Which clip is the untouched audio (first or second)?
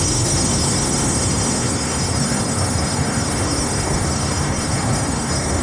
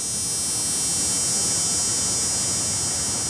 second